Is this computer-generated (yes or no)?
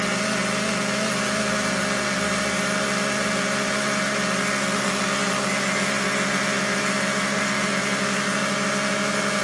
no